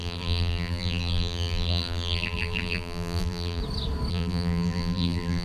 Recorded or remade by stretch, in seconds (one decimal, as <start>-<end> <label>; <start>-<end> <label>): 0.0-3.6 remade; 3.6-4.1 recorded; 4.1-5.4 remade